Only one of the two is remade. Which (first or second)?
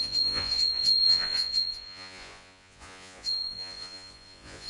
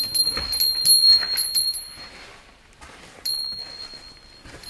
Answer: first